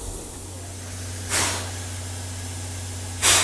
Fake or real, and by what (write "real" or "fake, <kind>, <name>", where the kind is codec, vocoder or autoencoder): real